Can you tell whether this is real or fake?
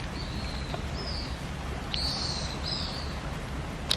real